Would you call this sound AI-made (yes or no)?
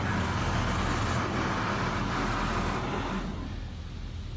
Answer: no